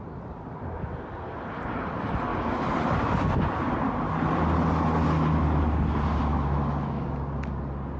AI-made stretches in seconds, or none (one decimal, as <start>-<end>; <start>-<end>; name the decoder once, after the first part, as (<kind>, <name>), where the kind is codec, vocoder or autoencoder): 6.3-7.1 (autoencoder, DAC-VAE)